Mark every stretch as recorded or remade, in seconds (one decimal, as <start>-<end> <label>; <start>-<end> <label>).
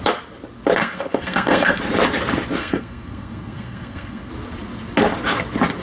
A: 0.0-0.8 recorded; 0.8-1.8 remade; 1.8-2.6 recorded; 2.6-4.3 remade; 4.3-5.8 recorded